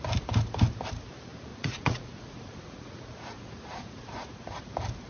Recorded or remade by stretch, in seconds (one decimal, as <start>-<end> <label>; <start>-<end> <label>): 0.0-1.5 recorded; 1.5-4.6 remade; 4.6-5.1 recorded